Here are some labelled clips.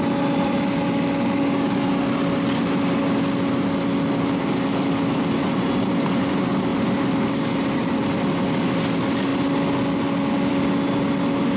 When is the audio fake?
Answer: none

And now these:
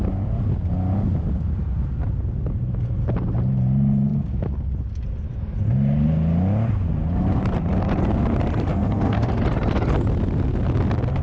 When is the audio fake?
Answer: 8.7-9.3 (codec, SNAC)

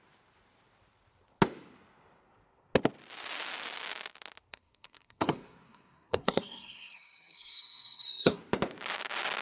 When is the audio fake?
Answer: 4.5-8.4 (codec, SNAC)